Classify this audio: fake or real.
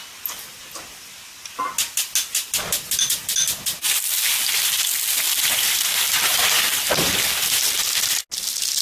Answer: real